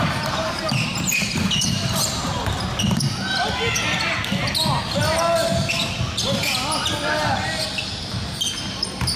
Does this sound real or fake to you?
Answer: real